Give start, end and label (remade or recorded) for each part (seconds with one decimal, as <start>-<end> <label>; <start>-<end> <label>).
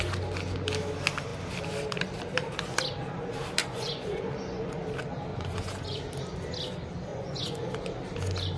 0.0-3.6 recorded; 3.6-4.8 remade; 4.8-5.3 recorded; 5.3-6.0 remade; 6.0-7.1 recorded; 7.1-7.7 remade; 7.7-8.6 recorded